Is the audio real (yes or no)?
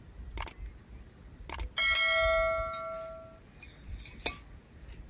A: yes